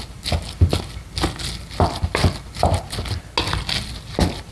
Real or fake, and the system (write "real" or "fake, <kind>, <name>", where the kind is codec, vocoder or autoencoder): real